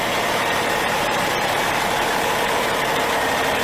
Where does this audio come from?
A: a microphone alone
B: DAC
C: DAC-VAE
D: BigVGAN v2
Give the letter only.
D